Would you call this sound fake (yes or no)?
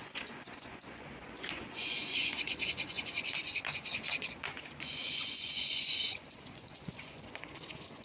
yes